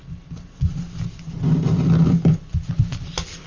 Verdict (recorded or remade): recorded